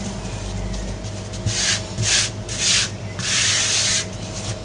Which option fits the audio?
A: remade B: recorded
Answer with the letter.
B